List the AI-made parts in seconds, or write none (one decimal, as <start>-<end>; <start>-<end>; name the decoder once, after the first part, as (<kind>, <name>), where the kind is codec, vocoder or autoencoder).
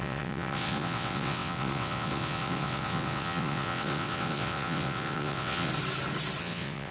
0.0-5.7 (vocoder, WaveNeXt); 6.4-6.9